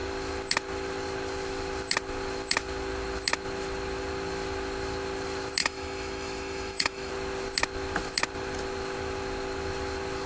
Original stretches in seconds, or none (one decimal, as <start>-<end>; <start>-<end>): 0.0-5.6; 7.1-10.3